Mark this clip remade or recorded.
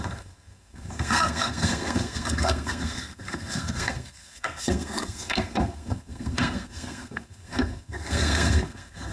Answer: remade